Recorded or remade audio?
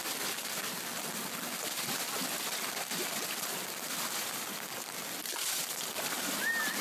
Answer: recorded